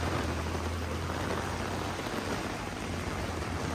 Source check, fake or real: fake